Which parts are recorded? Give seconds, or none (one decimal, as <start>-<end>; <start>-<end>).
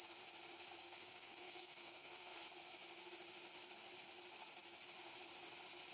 0.0-0.8; 2.5-5.9